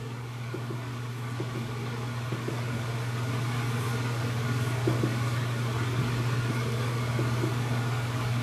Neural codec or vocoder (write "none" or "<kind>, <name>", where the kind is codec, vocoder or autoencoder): codec, DAC